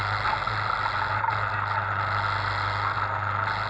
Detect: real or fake real